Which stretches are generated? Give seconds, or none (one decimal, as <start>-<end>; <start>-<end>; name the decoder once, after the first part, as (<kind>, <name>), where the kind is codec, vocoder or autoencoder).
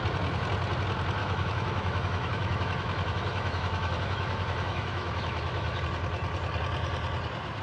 1.2-5.8 (autoencoder, DAC-VAE)